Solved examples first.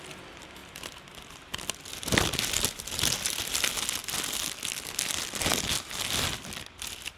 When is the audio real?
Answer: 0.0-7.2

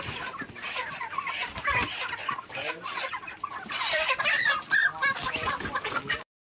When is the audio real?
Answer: none

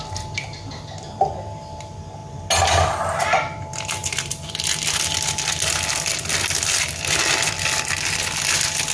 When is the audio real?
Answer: 0.0-8.9